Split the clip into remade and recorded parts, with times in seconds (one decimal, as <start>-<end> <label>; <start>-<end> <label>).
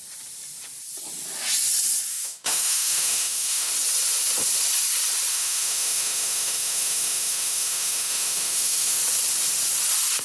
0.0-2.1 recorded; 2.1-3.7 remade; 3.7-5.3 recorded; 5.3-9.0 remade; 9.0-10.2 recorded